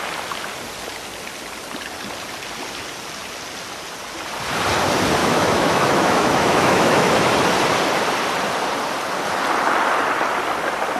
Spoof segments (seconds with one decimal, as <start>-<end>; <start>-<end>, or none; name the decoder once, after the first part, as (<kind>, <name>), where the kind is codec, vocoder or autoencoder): 5.2-7.3 (autoencoder, DAC-VAE)